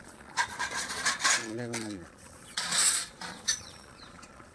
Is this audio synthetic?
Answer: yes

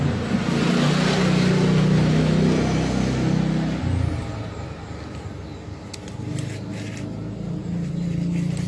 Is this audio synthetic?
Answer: no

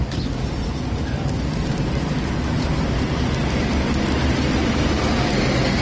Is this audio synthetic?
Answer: no